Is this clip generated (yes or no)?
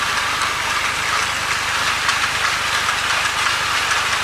no